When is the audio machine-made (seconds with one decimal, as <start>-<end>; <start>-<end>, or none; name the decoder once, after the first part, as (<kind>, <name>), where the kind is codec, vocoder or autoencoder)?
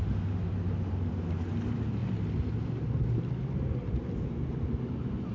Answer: none